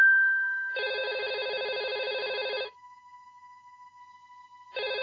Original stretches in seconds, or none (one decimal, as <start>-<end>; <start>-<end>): 0.0-1.0; 4.0-5.0